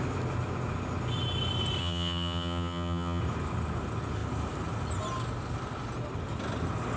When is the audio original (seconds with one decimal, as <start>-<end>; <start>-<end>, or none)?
0.0-1.8; 3.2-7.0